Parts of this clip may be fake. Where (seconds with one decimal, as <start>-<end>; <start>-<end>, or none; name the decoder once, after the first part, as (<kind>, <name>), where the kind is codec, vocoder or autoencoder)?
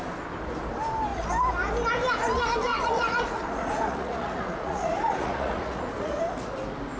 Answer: 2.7-6.2 (vocoder, Vocos)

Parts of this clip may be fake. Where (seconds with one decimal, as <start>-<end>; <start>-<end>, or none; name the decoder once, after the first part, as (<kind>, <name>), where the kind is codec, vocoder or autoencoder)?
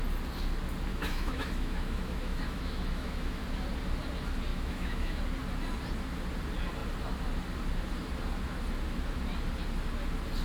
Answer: 0.9-3.4 (autoencoder, DAC-VAE); 4.5-5.2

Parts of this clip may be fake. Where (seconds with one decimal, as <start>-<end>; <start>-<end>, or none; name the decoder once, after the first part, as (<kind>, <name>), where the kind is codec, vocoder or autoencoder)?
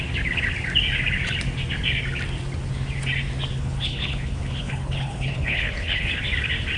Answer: 3.5-6.2 (codec, HILCodec)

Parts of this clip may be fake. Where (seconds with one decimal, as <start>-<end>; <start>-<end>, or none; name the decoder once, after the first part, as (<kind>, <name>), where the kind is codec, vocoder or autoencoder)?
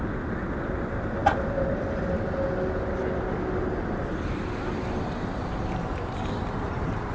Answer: none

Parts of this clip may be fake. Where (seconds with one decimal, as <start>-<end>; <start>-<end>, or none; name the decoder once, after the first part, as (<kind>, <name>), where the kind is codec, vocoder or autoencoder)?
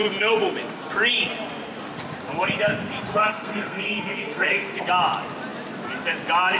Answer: 3.1-4.8 (codec, SNAC)